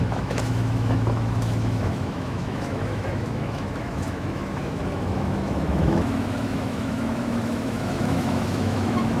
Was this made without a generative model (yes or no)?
no